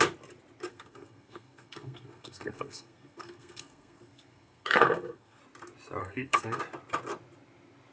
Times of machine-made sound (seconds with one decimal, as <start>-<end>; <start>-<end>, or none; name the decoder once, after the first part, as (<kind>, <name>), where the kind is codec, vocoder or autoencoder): 0.7-5.4 (codec, SNAC); 6.0-6.6